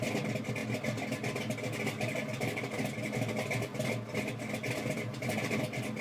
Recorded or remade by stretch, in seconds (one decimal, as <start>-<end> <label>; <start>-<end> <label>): 0.0-6.0 recorded